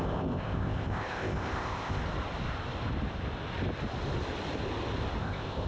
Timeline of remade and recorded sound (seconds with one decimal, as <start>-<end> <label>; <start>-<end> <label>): 0.0-2.0 remade; 2.0-5.2 recorded; 5.2-5.7 remade